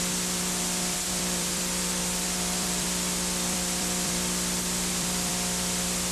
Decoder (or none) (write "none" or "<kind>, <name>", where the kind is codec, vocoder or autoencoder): vocoder, BigVGAN v2